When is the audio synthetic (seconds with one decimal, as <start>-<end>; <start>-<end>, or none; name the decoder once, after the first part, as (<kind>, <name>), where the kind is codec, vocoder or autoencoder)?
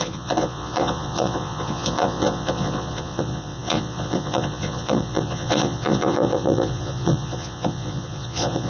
0.0-8.7 (vocoder, Vocos)